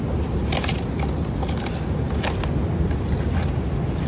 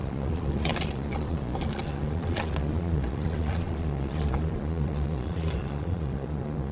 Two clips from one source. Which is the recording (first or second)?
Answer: first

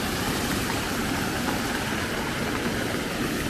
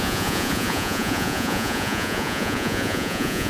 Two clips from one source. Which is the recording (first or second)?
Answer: first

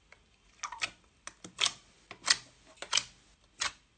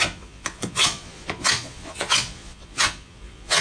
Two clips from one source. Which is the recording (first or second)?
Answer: first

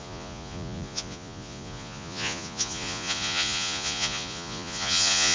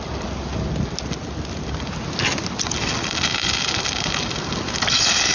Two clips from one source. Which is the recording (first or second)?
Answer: second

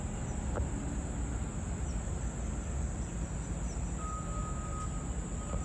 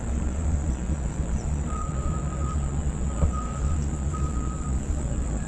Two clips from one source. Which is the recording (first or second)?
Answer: first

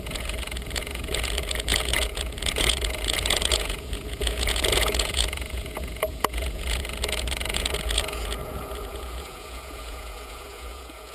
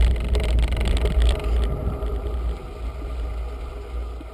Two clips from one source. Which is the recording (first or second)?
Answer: second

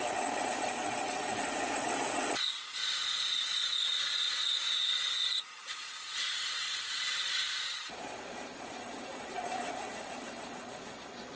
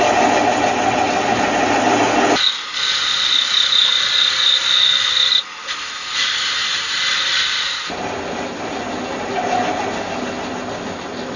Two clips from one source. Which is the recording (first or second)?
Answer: second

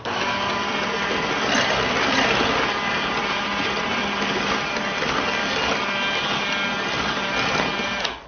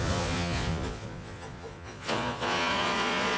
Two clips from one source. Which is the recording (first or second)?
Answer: first